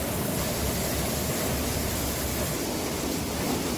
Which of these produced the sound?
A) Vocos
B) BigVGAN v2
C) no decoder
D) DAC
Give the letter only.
C